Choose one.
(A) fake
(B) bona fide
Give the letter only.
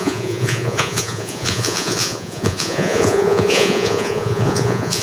A